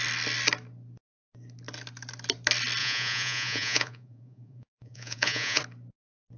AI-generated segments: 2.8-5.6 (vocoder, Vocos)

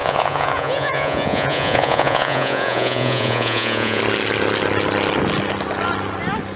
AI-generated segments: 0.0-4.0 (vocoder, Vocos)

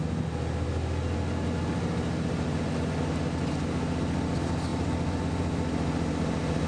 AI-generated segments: none